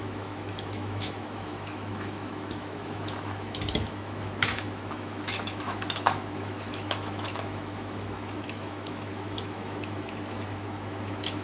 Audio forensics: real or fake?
fake